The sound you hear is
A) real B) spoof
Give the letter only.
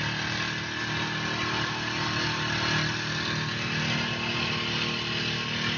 A